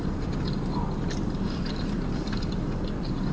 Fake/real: fake